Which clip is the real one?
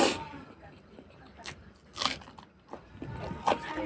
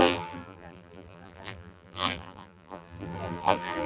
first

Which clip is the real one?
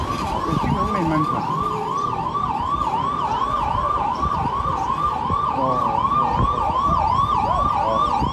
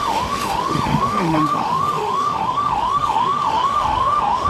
first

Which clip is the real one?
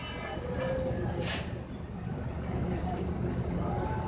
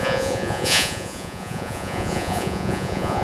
first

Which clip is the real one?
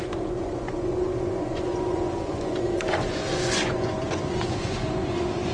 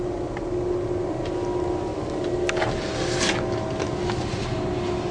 second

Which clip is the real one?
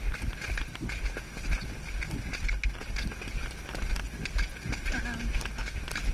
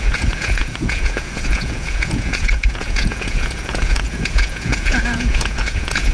first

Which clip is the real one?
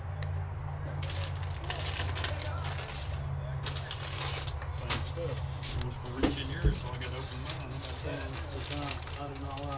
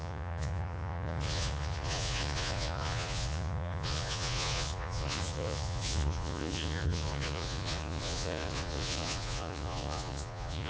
first